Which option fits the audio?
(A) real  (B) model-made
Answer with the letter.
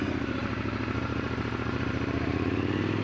B